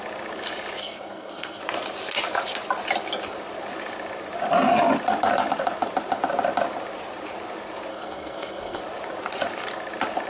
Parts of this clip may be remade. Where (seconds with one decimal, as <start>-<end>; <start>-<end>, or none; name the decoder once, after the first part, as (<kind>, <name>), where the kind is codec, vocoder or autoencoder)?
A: 0.8-1.6 (codec, SNAC); 7.9-8.8